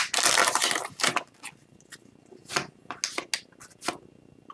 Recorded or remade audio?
recorded